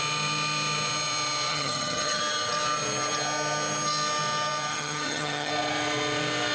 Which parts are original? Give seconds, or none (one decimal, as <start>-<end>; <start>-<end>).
0.0-1.5; 2.2-4.7; 5.5-6.5